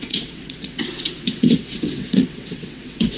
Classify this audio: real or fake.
fake